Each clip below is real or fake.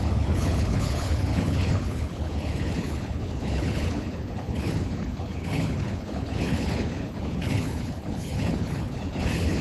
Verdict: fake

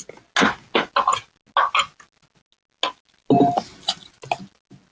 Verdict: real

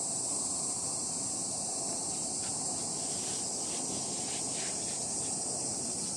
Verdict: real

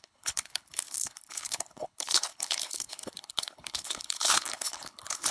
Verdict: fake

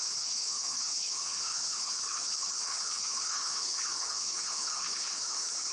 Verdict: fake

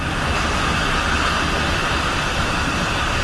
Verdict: real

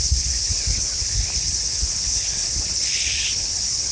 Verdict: fake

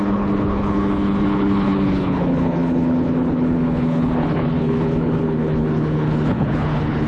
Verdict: fake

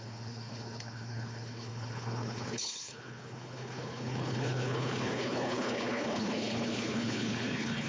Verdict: fake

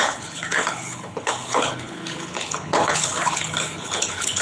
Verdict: fake